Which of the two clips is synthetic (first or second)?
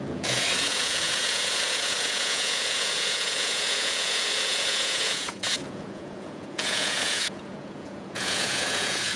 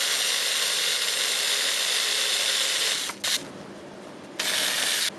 first